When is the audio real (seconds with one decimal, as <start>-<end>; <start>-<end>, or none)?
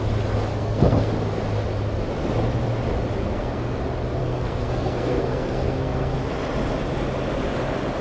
0.0-0.5; 1.1-3.2; 3.8-4.2; 6.2-8.0